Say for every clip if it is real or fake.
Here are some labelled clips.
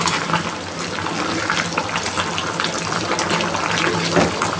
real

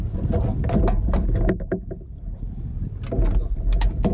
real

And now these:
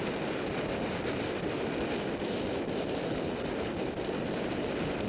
real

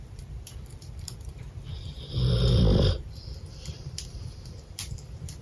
fake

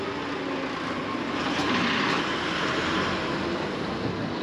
real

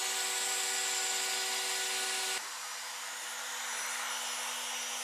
real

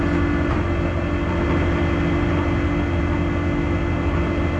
real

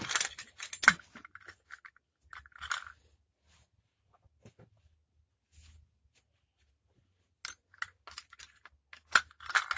real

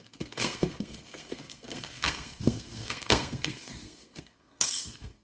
fake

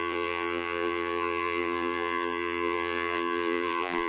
fake